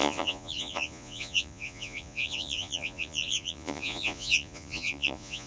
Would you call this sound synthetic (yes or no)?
yes